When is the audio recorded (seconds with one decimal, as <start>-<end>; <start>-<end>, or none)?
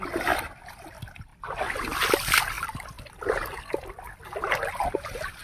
1.3-4.5